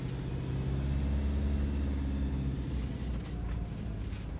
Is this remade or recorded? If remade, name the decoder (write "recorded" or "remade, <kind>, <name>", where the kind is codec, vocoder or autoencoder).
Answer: recorded